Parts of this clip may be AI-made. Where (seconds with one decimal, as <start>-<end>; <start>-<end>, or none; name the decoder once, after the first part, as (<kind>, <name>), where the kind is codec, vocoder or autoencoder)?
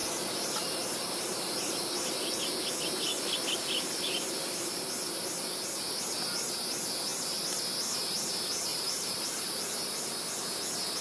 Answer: 0.0-2.4 (vocoder, BigVGAN v2); 7.1-7.6; 8.7-10.0